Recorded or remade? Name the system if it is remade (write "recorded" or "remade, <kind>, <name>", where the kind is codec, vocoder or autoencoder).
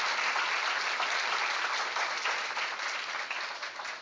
recorded